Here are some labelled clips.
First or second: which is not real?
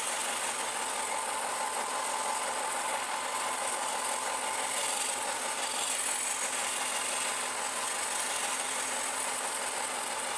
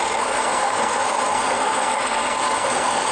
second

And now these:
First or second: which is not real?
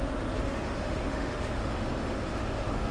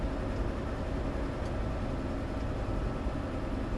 first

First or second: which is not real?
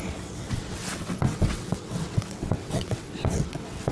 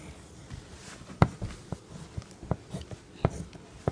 first